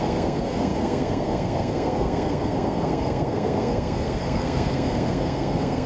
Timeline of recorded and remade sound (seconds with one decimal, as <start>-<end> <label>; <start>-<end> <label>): 0.0-5.9 remade